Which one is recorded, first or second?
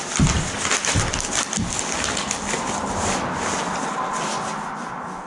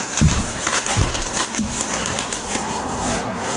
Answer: first